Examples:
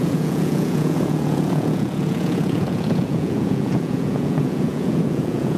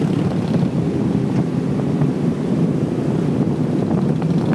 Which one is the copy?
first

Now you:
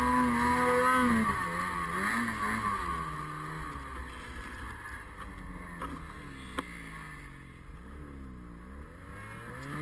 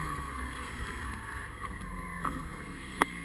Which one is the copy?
second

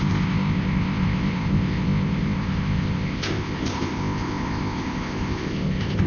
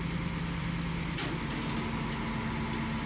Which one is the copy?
first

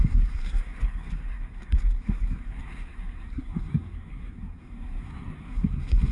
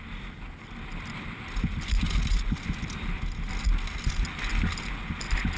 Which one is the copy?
first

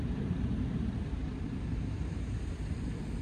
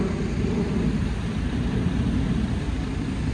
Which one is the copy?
first